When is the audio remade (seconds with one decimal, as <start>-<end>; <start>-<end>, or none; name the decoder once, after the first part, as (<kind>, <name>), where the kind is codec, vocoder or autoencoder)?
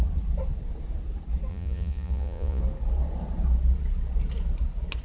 1.5-2.6 (vocoder, Vocos)